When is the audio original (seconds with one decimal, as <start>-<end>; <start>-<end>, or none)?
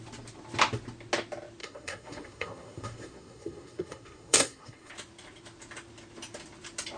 0.0-1.6; 4.9-7.0